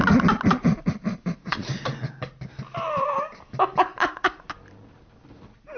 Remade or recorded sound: recorded